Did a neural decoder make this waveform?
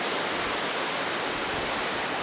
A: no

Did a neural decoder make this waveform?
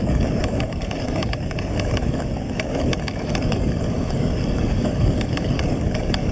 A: yes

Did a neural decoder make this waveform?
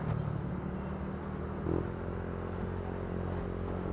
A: no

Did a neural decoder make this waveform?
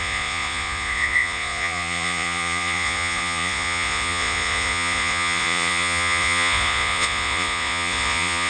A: yes